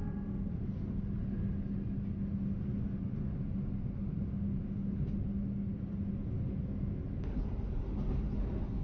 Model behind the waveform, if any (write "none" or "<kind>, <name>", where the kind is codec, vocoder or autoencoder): none